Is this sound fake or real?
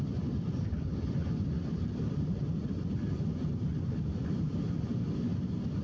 real